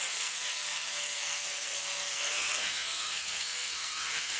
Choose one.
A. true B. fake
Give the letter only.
B